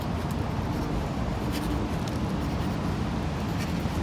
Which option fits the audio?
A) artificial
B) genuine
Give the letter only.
B